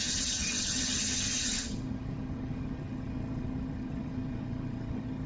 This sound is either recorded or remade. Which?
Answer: remade